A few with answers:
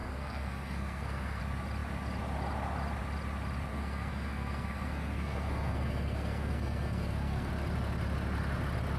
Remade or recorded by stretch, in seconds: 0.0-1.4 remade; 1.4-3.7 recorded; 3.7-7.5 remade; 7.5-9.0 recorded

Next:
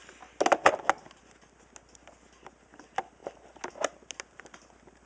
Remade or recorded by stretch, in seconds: 0.0-5.1 recorded